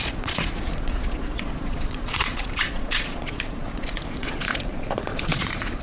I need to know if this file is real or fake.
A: fake